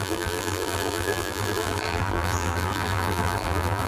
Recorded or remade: remade